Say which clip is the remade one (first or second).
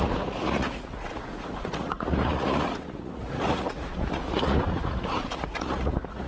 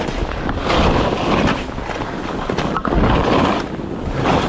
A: first